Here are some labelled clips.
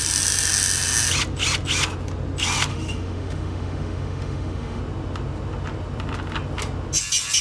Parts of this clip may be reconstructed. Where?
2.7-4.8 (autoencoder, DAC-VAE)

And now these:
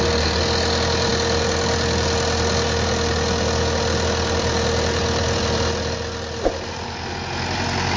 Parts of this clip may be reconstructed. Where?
none

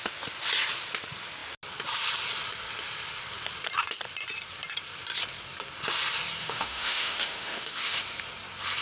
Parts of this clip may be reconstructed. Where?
6.4-8.0 (autoencoder, DAC-VAE)

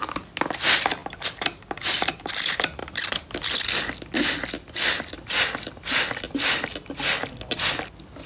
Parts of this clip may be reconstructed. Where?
none

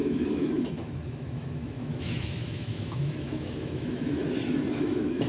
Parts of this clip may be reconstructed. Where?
0.0-4.2 (autoencoder, DAC-VAE); 4.8-5.3

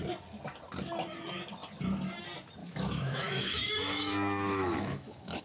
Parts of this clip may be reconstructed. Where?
2.6-5.4 (autoencoder, DAC-VAE)

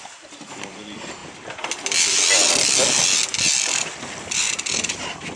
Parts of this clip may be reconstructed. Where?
none

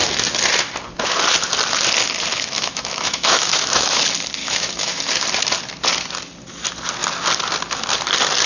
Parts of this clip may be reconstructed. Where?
2.3-4.0 (autoencoder, DAC-VAE); 4.4-5.0